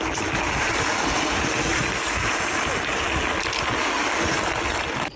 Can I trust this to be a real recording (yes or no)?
yes